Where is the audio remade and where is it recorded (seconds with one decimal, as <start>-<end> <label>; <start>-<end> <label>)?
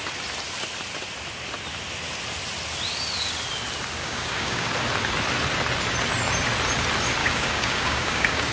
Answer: 0.0-4.0 recorded; 4.0-4.7 remade; 4.7-7.2 recorded; 7.2-8.5 remade